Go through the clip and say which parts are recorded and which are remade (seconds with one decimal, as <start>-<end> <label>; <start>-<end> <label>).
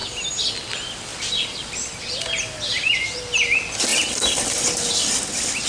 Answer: 0.0-5.7 recorded